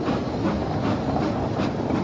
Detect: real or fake fake